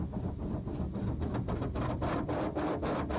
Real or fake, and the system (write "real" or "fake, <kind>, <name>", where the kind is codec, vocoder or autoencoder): real